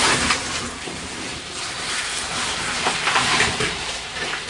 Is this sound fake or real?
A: fake